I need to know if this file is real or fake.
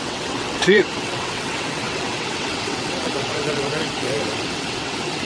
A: fake